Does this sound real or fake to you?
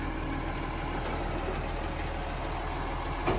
real